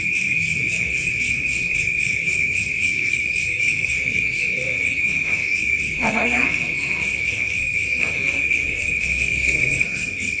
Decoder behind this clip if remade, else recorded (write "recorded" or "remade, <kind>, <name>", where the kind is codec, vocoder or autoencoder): remade, codec, SNAC